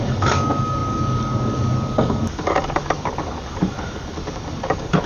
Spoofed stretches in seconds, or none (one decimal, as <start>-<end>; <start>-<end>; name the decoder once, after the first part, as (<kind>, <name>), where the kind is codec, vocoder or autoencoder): 0.0-5.1 (codec, DAC)